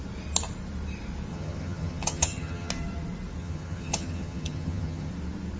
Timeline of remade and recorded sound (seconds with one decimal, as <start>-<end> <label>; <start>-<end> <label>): 0.0-1.3 recorded; 1.3-2.7 remade; 2.7-3.4 recorded; 3.4-5.1 remade; 5.1-5.6 recorded